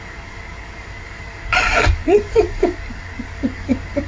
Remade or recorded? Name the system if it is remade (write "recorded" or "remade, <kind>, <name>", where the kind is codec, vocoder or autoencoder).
remade, codec, DAC